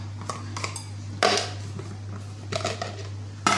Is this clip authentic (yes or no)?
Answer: yes